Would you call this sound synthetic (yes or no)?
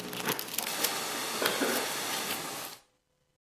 no